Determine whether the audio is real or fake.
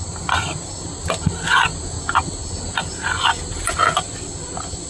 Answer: real